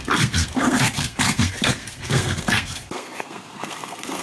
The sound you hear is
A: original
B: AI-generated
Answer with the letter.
B